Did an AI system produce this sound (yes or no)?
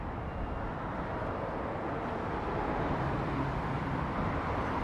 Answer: yes